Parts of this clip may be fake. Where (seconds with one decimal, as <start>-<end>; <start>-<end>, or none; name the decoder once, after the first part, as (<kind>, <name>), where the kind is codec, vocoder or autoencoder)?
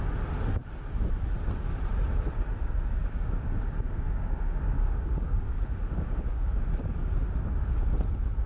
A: 3.0-6.6 (codec, DAC)